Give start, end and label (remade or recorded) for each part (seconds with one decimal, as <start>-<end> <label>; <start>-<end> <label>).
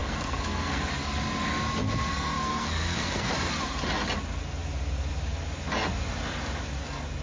0.0-0.9 remade; 0.9-2.1 recorded; 2.1-3.3 remade; 3.3-7.2 recorded